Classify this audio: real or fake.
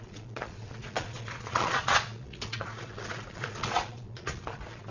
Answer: fake